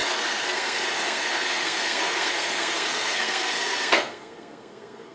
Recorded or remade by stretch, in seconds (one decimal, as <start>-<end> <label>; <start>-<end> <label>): 0.0-5.1 remade